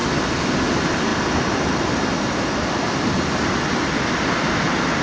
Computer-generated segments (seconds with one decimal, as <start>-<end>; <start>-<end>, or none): none